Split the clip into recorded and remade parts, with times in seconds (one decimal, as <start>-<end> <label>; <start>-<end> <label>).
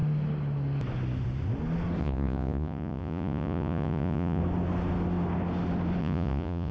0.0-2.0 recorded; 2.0-4.4 remade; 4.4-6.0 recorded; 6.0-6.7 remade